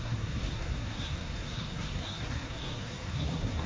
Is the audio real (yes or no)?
no